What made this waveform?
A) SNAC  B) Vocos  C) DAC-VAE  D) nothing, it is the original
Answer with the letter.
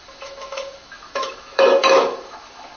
C